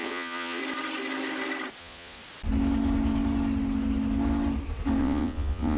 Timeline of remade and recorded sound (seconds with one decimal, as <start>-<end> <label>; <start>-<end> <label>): 0.0-0.6 remade; 0.6-1.8 recorded; 1.8-2.2 remade; 2.2-5.0 recorded; 5.0-5.8 remade